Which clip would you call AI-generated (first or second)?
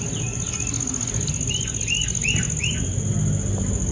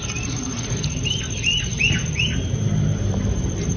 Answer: second